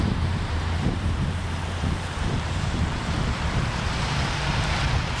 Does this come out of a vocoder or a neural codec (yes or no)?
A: yes